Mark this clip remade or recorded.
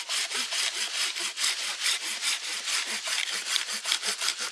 remade